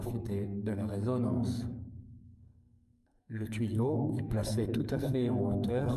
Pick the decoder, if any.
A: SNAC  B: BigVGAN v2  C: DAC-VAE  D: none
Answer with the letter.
A